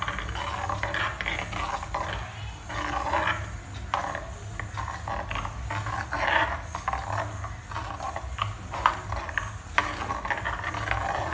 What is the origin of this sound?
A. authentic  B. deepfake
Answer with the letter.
A